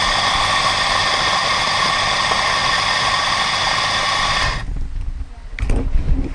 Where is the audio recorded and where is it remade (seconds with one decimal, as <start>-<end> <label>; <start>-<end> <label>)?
0.0-6.3 recorded